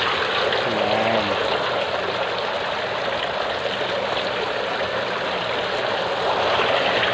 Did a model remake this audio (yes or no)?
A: no